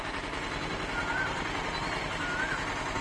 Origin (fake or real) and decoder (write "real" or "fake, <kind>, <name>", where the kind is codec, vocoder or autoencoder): real